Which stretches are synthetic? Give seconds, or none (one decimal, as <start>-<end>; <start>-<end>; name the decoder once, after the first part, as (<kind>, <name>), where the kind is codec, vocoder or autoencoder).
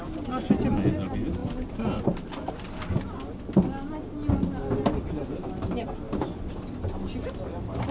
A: none